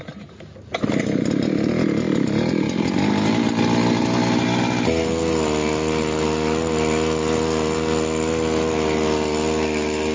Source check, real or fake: real